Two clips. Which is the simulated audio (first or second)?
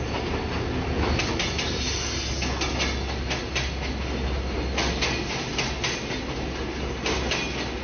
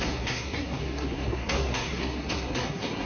second